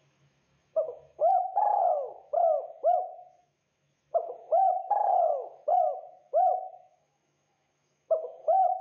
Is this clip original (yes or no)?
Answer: no